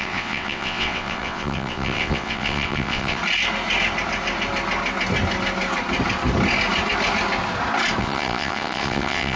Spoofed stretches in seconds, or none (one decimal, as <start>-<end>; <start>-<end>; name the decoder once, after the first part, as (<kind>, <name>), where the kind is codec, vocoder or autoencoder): 0.0-3.2 (vocoder, WaveNeXt); 8.0-9.4